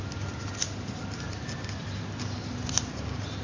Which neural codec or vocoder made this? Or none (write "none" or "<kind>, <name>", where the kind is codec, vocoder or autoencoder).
none